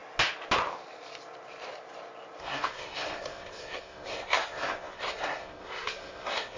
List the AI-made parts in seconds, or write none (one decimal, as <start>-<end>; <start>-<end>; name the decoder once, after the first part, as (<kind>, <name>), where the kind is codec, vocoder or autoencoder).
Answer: 2.4-6.6 (codec, SNAC)